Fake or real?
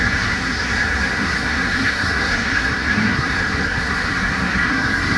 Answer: fake